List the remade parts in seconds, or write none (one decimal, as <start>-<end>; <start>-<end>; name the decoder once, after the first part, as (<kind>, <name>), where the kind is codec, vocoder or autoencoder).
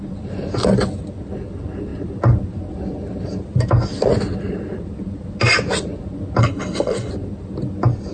6.4-7.1 (codec, HILCodec)